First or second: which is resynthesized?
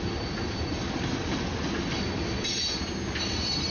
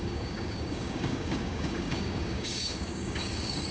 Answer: second